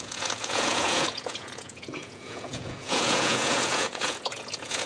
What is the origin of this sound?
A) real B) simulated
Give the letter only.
B